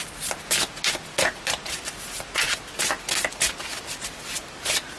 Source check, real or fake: real